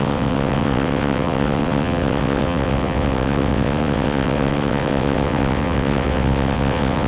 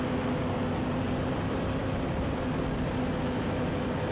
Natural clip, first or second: second